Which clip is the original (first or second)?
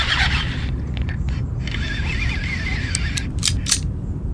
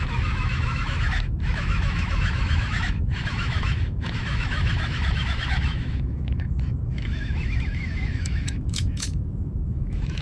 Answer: first